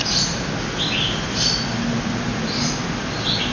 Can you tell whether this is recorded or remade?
recorded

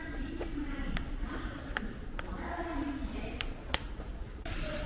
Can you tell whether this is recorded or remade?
remade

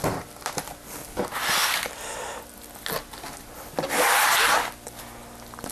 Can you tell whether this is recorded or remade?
recorded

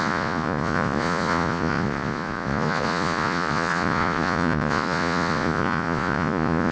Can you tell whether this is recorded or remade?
remade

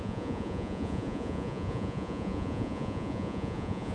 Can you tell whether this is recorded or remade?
remade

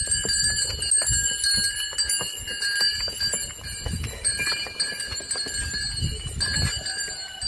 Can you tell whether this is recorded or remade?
recorded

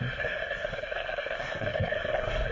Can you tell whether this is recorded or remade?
remade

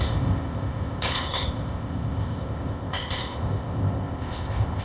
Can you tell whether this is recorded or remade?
remade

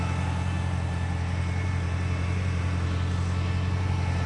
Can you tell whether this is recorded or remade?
recorded